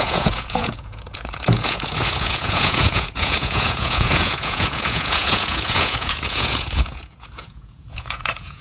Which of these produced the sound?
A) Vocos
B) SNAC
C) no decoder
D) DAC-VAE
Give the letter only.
A